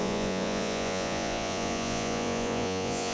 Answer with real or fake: fake